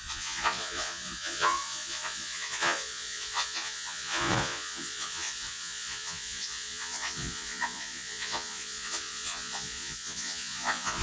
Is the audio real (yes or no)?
no